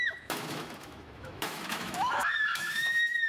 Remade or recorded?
remade